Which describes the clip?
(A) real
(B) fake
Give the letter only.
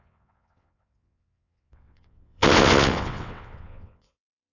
B